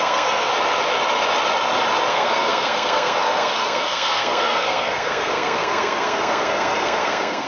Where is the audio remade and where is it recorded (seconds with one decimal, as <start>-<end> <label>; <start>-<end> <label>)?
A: 0.0-0.5 remade; 0.5-2.1 recorded; 2.1-7.5 remade